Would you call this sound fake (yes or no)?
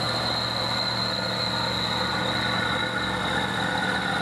no